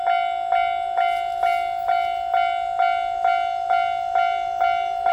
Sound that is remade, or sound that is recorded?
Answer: recorded